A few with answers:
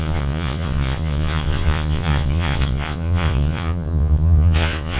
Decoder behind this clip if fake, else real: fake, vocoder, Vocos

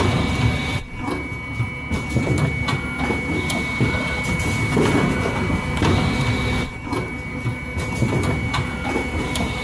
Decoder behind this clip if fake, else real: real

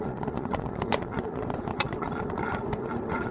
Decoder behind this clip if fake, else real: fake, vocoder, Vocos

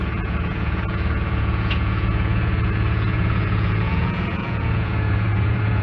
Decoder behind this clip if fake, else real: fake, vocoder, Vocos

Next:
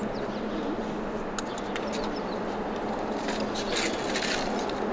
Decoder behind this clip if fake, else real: real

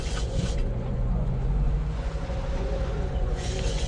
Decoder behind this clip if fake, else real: fake, vocoder, Vocos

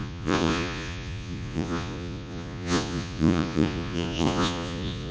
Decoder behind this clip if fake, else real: fake, vocoder, Vocos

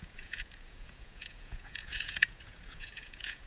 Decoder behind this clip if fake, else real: fake, vocoder, Vocos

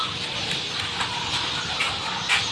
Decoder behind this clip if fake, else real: real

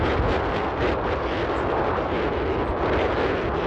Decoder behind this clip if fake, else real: real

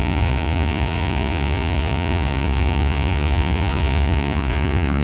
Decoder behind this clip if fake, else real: fake, vocoder, Vocos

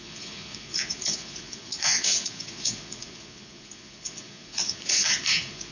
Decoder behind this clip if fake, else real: fake, vocoder, Vocos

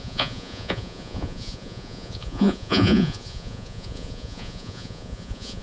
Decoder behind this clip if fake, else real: fake, vocoder, Vocos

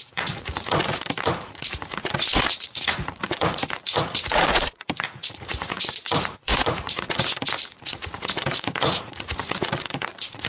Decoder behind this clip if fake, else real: fake, vocoder, Vocos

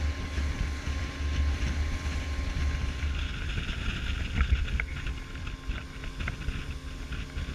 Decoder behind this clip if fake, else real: real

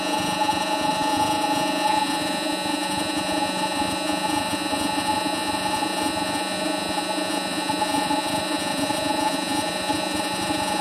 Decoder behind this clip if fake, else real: fake, vocoder, Vocos